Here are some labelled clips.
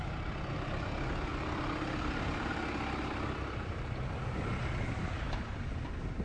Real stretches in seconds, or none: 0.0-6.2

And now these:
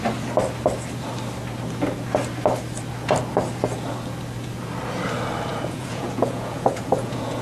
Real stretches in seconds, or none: 0.0-5.5

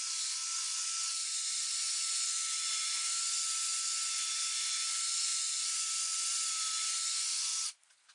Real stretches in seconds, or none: 0.0-1.1; 1.7-5.3; 6.5-7.5

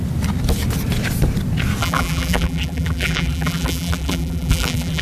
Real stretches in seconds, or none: 0.0-1.8

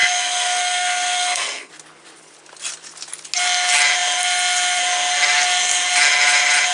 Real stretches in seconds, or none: 1.7-6.7

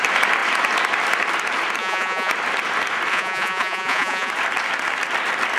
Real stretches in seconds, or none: 0.0-1.8; 2.3-3.1; 4.3-5.6

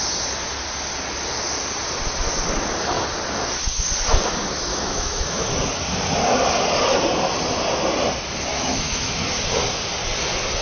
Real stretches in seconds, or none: 0.0-4.7; 5.5-8.5; 9.4-10.6